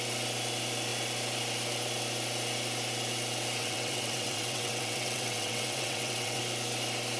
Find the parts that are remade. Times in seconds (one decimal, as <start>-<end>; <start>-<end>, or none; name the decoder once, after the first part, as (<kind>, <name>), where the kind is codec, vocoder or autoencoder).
3.6-6.4 (vocoder, WaveNeXt)